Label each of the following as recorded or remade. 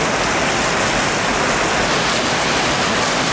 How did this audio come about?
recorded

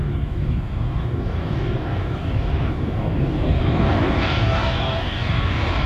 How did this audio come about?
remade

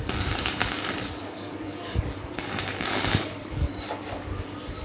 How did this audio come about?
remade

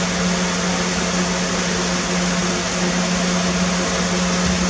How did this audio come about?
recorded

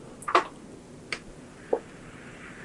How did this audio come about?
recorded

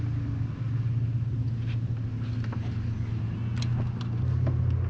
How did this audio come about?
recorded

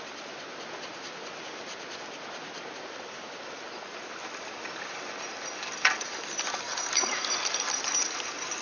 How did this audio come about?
recorded